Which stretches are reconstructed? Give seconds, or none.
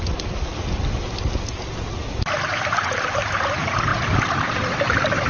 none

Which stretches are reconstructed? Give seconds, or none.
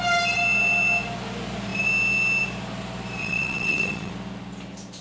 3.2-4.1 (vocoder, WaveNeXt)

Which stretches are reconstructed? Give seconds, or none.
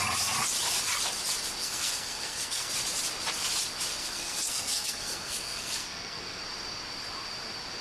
1.6-2.7 (codec, SNAC); 3.9-6.4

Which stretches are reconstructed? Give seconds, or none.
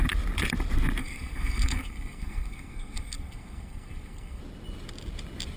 1.0-4.4 (codec, SNAC)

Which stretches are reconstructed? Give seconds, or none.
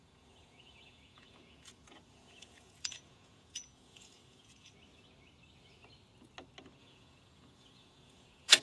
0.0-4.7 (vocoder, Vocos); 6.8-8.6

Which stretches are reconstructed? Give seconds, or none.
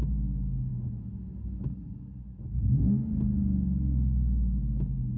none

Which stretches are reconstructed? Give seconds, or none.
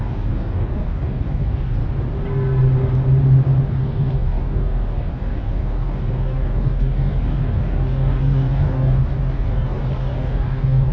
0.0-1.8 (codec, DAC); 3.7-10.9